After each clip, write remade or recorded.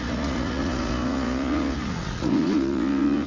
remade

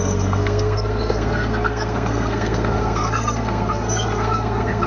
remade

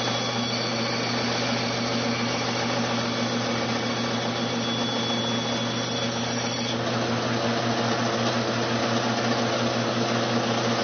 recorded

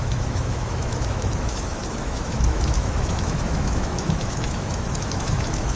remade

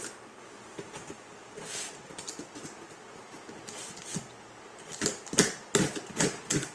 recorded